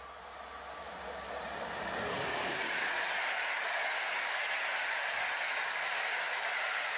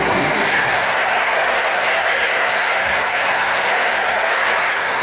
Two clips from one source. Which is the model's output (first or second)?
second